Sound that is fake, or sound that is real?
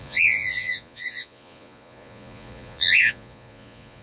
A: fake